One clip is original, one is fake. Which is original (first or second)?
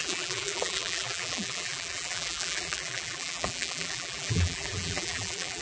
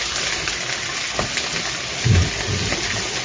second